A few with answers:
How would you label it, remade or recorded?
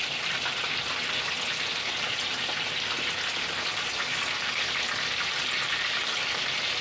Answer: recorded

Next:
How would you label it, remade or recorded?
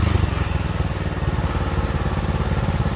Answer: recorded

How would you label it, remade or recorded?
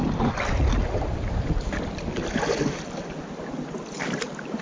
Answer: recorded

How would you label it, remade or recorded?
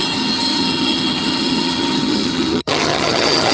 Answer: remade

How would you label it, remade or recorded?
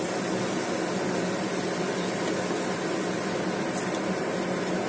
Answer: recorded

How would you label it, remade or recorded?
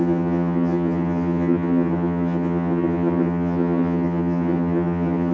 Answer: remade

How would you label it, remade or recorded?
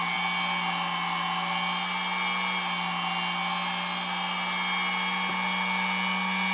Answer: recorded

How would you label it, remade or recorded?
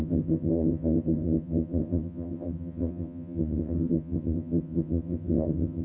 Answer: remade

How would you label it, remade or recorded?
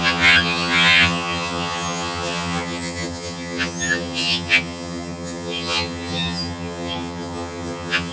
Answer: remade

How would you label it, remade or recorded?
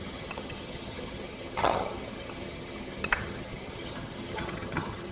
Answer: remade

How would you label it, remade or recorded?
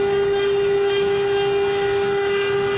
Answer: recorded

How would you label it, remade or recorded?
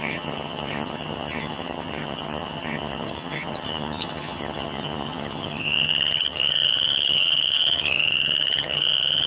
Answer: remade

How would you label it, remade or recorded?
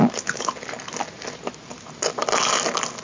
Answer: recorded